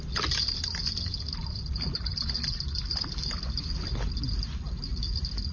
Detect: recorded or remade recorded